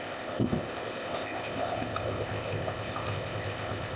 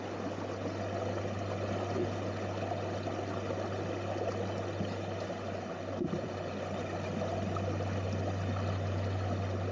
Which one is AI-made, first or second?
first